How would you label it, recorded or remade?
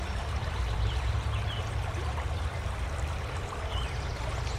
remade